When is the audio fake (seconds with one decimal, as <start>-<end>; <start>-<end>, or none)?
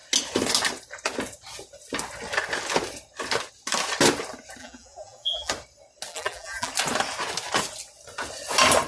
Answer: 4.6-5.5; 6.1-6.7